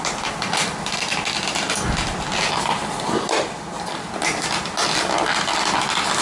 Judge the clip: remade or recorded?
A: recorded